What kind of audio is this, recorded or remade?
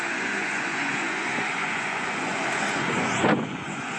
remade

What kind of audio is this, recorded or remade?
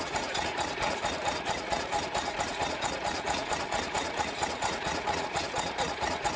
remade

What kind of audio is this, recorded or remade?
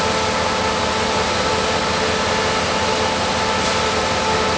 recorded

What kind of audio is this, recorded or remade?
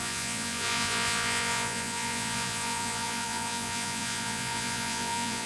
remade